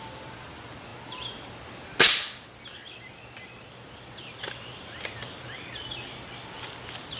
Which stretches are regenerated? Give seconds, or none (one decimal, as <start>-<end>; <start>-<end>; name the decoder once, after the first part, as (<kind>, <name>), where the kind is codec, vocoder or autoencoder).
none